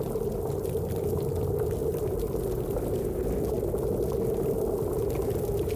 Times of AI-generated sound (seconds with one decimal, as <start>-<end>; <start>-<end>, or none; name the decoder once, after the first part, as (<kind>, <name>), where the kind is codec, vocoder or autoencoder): none